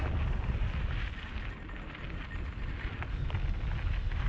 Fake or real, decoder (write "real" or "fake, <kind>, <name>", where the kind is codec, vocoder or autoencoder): real